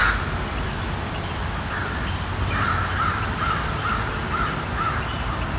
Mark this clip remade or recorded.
recorded